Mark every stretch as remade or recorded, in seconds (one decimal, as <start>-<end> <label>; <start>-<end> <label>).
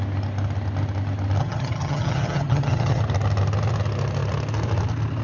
0.0-1.4 recorded; 1.4-3.0 remade; 3.0-5.2 recorded